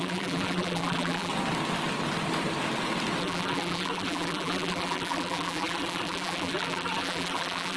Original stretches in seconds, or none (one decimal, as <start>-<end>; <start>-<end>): 1.3-3.2